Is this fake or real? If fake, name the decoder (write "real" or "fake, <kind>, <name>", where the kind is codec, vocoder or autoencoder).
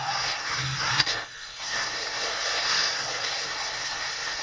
fake, codec, SNAC